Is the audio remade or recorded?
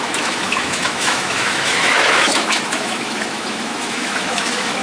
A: remade